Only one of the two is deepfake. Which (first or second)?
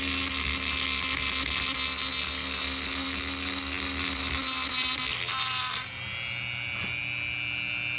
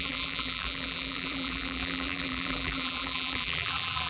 second